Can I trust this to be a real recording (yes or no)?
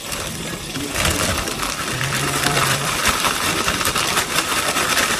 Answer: no